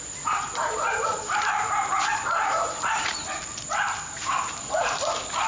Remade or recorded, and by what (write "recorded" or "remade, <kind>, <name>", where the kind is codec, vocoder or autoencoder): remade, vocoder, BigVGAN v2